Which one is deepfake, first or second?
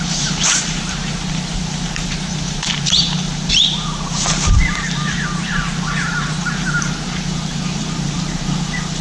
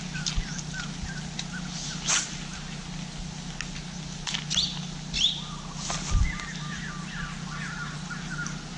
first